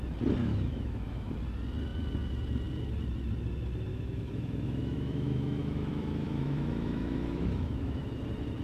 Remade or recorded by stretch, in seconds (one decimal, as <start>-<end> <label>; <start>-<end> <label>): 0.0-0.4 recorded; 0.4-1.3 remade; 1.3-3.9 recorded; 3.9-8.2 remade; 8.2-8.6 recorded